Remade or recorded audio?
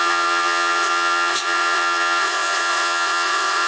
remade